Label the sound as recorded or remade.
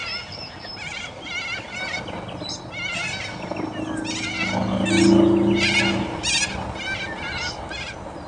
recorded